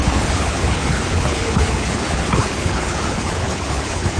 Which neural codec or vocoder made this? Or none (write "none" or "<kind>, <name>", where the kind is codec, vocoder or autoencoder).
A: codec, HILCodec